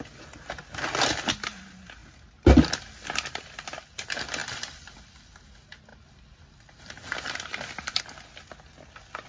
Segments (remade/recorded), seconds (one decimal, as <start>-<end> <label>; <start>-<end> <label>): 0.0-4.4 recorded; 4.4-5.5 remade; 5.5-5.9 recorded; 5.9-8.0 remade; 8.0-9.3 recorded